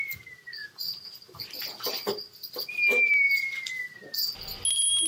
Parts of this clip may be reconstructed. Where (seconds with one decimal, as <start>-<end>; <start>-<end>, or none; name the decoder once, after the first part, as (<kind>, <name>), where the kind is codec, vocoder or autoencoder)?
0.6-1.7 (vocoder, BigVGAN v2)